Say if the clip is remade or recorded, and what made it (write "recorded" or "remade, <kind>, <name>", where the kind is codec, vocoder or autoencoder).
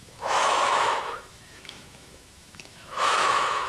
remade, autoencoder, DAC-VAE